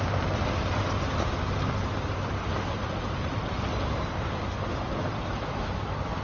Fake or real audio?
real